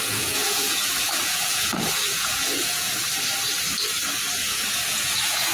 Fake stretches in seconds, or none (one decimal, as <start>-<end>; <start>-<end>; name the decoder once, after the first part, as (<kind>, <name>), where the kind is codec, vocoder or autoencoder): 0.0-3.0 (vocoder, Vocos); 4.3-5.5